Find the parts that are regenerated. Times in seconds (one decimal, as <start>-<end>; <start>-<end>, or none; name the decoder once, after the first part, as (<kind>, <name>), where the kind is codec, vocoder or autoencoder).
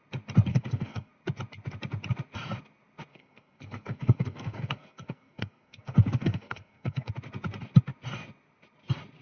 0.5-1.1 (codec, SNAC); 3.1-7.1